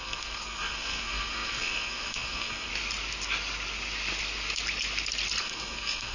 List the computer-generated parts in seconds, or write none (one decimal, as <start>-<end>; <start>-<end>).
0.0-2.7; 5.4-6.1